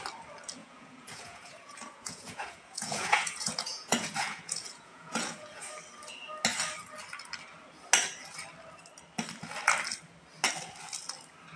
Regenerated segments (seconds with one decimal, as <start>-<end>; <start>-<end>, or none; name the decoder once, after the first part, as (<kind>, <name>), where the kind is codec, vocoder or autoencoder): 0.6-5.7 (vocoder, Vocos)